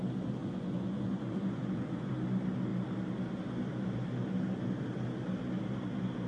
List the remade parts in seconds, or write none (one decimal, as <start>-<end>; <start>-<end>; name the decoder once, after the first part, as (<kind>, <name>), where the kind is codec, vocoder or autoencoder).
0.4-2.1 (vocoder, Vocos)